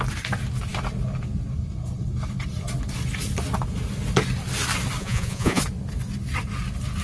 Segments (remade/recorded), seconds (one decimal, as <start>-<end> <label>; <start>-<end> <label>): 0.0-5.0 recorded; 5.0-5.6 remade; 5.6-7.0 recorded